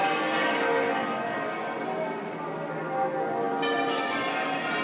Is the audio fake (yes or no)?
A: no